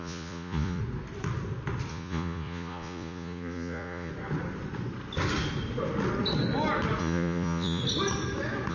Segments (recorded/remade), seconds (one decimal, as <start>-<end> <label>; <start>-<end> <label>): 0.0-0.8 remade; 0.8-1.9 recorded; 1.9-4.1 remade; 4.1-7.0 recorded; 7.0-7.8 remade; 7.8-8.7 recorded

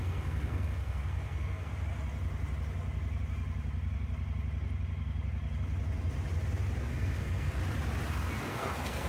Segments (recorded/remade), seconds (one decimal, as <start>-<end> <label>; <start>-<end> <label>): 0.0-1.7 remade; 1.7-6.8 recorded; 6.8-7.6 remade; 7.6-8.1 recorded; 8.1-9.1 remade

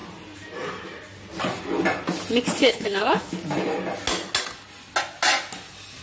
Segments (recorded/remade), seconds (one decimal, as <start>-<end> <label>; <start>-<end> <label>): 0.0-2.6 recorded; 2.6-3.3 remade; 3.3-6.0 recorded

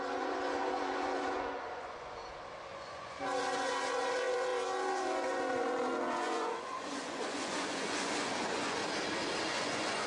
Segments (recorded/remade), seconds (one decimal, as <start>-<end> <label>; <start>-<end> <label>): 0.0-2.2 remade; 2.2-2.7 recorded; 2.7-8.8 remade; 8.8-9.4 recorded; 9.4-10.1 remade

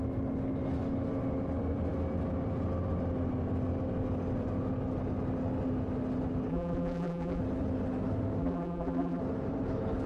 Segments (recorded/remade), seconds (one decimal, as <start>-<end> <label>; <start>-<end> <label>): 0.0-6.5 recorded; 6.5-7.4 remade; 7.4-8.4 recorded; 8.4-9.2 remade; 9.2-10.1 recorded

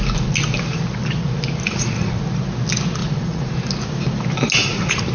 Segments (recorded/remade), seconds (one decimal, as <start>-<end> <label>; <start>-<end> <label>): 0.0-1.7 recorded; 1.7-2.2 remade; 2.2-3.0 recorded; 3.0-3.5 remade; 3.5-4.6 recorded; 4.6-5.1 remade